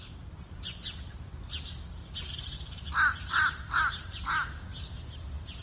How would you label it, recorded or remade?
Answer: recorded